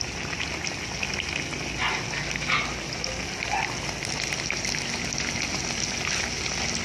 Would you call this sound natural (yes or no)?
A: yes